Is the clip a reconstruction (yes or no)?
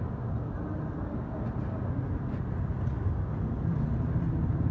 no